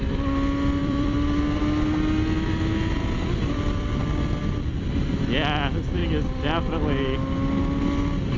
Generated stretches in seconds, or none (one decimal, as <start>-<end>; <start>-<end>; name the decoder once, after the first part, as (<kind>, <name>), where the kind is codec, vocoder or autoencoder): 0.8-1.6 (vocoder, BigVGAN v2)